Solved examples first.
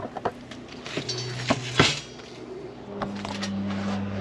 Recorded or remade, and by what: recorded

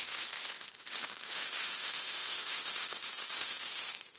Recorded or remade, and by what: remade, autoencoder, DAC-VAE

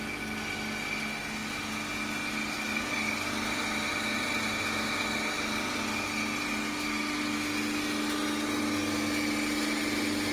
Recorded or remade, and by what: recorded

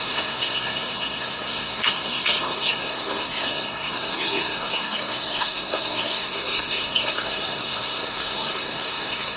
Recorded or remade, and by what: remade, codec, SNAC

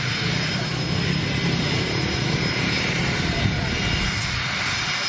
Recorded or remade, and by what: recorded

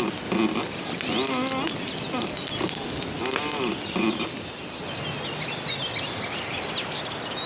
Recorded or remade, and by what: recorded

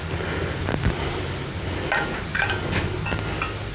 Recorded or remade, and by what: recorded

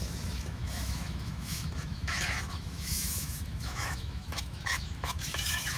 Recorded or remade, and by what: remade, autoencoder, DAC-VAE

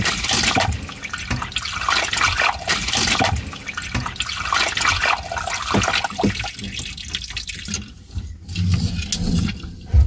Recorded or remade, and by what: recorded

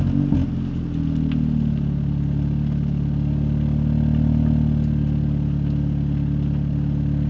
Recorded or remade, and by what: recorded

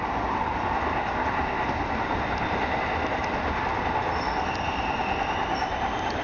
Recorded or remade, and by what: recorded